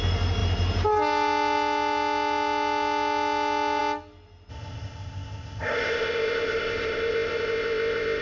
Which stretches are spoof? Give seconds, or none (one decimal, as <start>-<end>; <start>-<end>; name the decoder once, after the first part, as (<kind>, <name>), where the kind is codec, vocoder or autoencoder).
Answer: 4.5-8.2 (codec, ZipCodec)